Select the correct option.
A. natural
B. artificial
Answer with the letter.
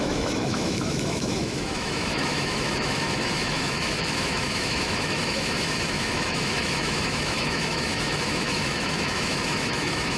B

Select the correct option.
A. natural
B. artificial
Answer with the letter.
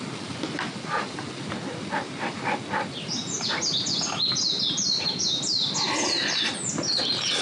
A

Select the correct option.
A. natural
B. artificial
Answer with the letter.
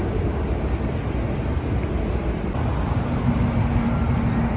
A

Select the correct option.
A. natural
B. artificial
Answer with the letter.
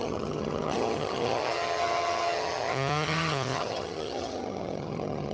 B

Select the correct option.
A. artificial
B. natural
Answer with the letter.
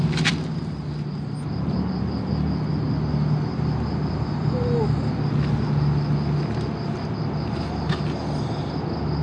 B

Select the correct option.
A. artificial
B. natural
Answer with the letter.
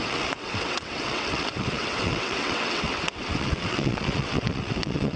A